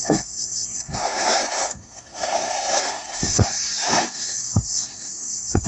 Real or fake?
fake